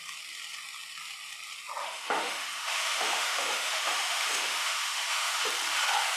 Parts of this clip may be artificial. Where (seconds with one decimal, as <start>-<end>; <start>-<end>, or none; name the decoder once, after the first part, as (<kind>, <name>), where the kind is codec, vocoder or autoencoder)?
1.8-5.5 (autoencoder, DAC-VAE)